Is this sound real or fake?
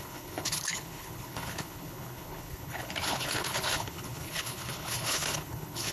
fake